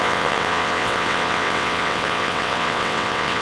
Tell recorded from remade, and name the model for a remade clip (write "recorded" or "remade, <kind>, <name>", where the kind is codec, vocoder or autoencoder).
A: remade, vocoder, WaveNeXt